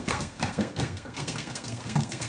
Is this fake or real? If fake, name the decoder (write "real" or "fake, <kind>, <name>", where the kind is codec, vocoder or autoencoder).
fake, codec, SNAC